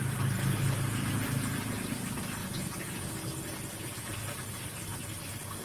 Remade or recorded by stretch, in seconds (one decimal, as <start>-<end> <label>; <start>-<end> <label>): 0.0-2.4 recorded; 2.4-3.1 remade; 3.1-5.6 recorded